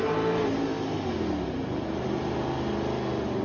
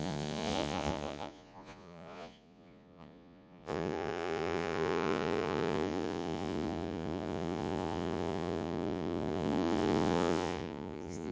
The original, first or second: first